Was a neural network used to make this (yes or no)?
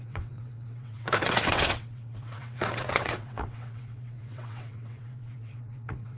yes